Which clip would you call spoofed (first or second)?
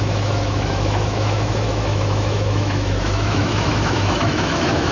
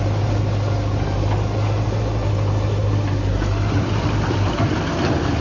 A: first